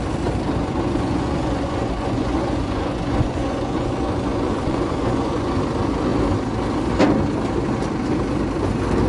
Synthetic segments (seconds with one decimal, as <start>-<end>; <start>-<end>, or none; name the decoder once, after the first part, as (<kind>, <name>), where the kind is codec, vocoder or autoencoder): 0.6-5.5 (vocoder, Vocos)